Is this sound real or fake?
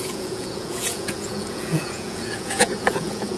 fake